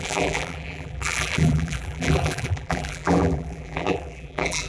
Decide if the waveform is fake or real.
fake